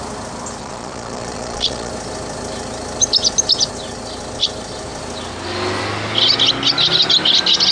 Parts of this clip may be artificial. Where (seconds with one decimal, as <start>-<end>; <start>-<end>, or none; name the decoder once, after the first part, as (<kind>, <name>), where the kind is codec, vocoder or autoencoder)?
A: 0.6-1.9 (vocoder, Vocos)